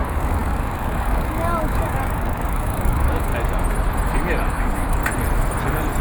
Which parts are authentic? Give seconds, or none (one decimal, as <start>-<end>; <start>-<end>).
3.3-4.5; 5.0-6.0